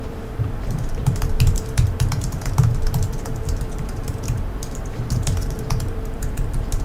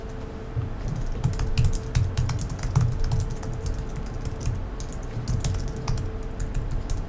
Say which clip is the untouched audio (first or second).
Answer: second